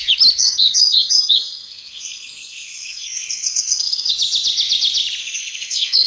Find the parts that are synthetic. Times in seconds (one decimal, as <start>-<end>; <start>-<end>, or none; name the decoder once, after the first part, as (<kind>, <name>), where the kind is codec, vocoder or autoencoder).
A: 0.4-4.1 (codec, SNAC); 5.2-6.1

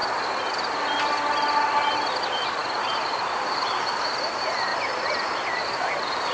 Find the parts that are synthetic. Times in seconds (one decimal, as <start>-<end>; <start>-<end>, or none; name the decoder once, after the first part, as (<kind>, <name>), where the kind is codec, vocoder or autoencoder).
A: 2.2-6.3 (vocoder, BigVGAN v2)

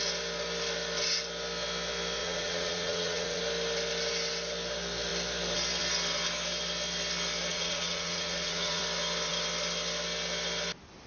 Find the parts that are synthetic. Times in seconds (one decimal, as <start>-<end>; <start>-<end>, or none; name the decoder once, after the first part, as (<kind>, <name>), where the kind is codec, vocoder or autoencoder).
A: 2.2-3.4 (vocoder, Vocos); 7.5-8.8